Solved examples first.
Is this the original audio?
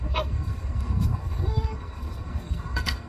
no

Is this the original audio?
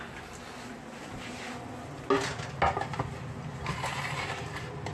yes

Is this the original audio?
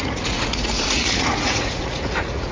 no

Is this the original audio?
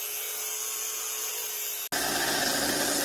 yes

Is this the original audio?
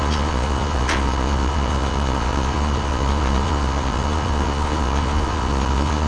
no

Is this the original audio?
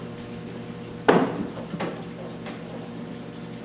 yes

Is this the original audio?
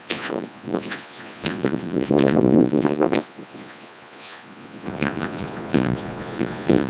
no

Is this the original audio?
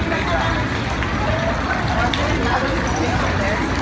yes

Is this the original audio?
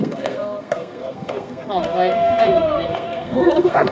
no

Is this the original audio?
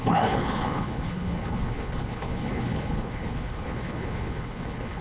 no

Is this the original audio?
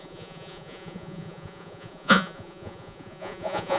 no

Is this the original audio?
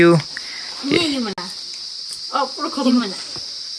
yes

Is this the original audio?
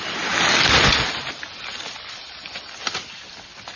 yes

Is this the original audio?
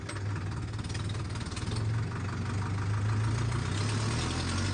yes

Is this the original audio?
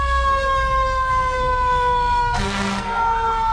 no